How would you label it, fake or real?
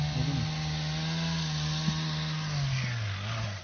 real